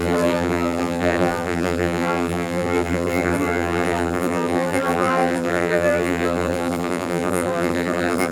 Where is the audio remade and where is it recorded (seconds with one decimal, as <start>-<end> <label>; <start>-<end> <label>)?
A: 0.0-8.3 remade